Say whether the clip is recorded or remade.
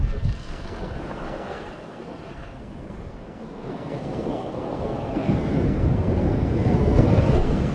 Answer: remade